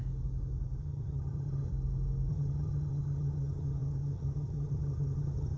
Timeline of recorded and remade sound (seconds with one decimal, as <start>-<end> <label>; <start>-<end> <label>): 0.0-0.8 recorded; 0.8-1.7 remade; 1.7-2.3 recorded; 2.3-5.6 remade